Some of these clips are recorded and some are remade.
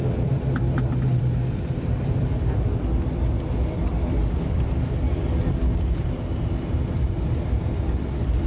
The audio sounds remade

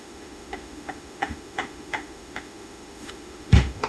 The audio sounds remade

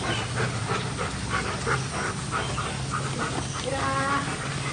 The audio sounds recorded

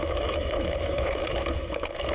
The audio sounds remade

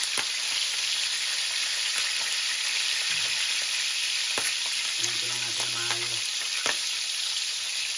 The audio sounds recorded